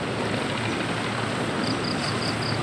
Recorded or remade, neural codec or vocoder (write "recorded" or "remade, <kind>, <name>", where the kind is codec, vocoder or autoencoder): recorded